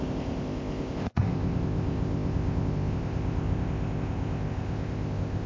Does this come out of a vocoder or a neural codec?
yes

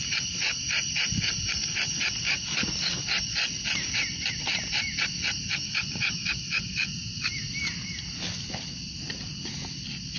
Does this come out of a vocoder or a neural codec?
no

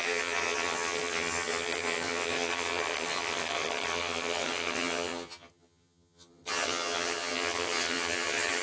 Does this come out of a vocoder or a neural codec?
yes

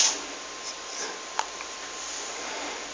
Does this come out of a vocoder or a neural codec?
no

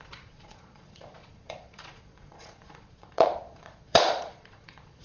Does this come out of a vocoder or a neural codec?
yes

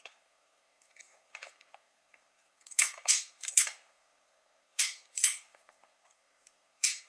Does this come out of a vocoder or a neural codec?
yes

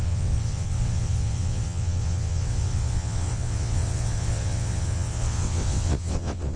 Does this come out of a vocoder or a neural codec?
yes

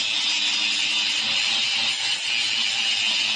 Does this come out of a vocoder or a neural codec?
no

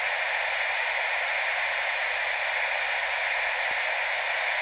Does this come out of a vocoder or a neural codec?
no